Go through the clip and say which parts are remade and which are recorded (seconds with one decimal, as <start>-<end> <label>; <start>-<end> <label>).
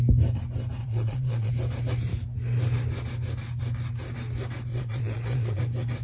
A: 0.0-0.8 recorded; 0.8-1.5 remade; 1.5-4.7 recorded; 4.7-5.6 remade; 5.6-6.0 recorded